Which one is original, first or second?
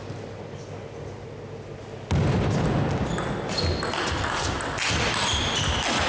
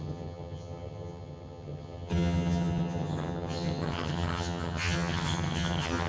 first